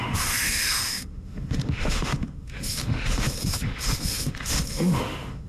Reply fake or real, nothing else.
fake